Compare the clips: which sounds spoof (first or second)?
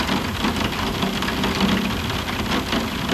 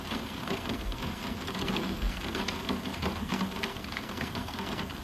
second